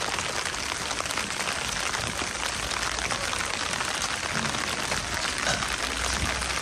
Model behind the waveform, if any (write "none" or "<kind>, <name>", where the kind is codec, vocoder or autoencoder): none